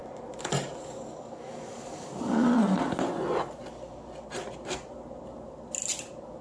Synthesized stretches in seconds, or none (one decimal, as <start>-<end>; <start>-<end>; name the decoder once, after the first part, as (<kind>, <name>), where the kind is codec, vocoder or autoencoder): 1.2-2.5 (codec, DAC)